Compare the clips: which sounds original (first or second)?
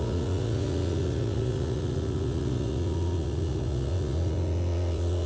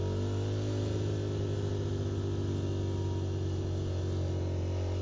second